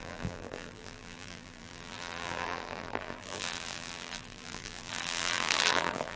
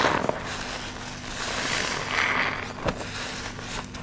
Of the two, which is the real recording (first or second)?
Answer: second